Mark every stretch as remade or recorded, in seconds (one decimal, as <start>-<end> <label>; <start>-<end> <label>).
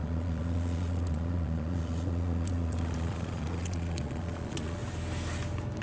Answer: 0.0-4.8 remade; 4.8-5.8 recorded